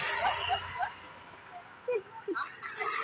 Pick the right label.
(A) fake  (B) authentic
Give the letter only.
B